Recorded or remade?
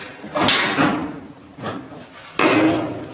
recorded